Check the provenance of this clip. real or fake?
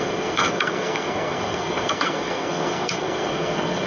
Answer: fake